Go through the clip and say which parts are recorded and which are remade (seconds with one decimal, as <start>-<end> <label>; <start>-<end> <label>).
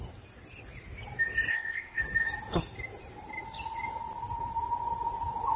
0.0-1.5 recorded; 1.5-2.0 remade; 2.0-5.6 recorded